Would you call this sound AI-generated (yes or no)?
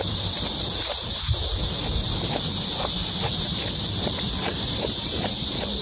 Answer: yes